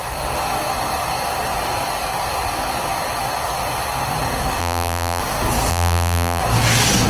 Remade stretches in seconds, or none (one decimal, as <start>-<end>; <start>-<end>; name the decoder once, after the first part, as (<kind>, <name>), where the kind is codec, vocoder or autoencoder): 4.6-5.2 (vocoder, BigVGAN v2); 5.7-6.4